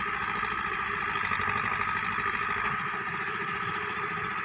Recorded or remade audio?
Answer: remade